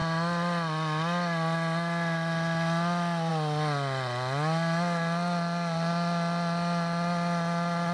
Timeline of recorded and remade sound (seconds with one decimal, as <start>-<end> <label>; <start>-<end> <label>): 0.0-7.9 recorded